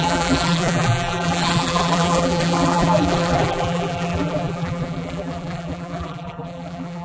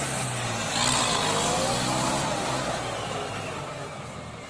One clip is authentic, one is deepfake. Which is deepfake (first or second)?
first